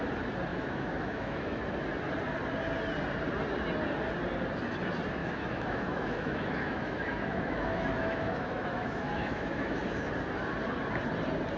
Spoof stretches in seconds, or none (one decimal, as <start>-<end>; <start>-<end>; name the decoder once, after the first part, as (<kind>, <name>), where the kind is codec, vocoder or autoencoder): 0.5-1.6 (autoencoder, DAC-VAE); 5.2-10.1